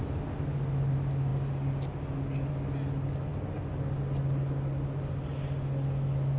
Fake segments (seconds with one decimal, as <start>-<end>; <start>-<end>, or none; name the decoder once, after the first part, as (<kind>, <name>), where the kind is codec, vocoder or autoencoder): none